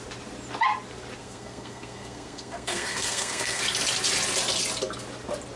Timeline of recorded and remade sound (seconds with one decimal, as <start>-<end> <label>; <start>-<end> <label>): 0.0-1.2 recorded; 1.2-3.6 remade; 3.6-5.6 recorded

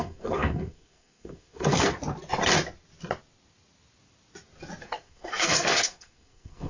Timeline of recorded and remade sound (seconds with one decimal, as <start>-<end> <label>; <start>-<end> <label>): 0.0-2.0 remade; 2.0-4.8 recorded; 4.8-6.7 remade

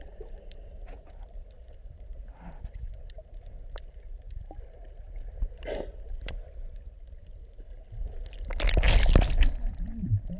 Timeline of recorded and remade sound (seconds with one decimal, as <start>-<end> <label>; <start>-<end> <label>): 0.0-10.4 recorded

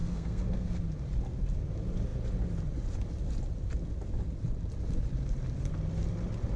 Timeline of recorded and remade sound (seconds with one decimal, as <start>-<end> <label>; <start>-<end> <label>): 0.0-0.8 remade; 0.8-6.6 recorded